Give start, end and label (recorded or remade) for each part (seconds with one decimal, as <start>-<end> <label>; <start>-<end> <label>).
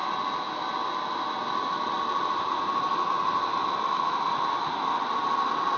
0.0-5.8 recorded